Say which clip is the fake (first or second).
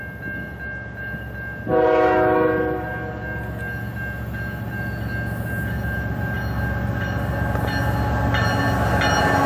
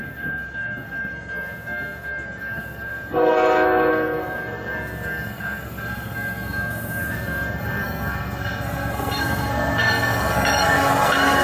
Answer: second